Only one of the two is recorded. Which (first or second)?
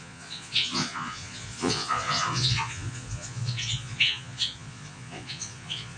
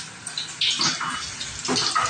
second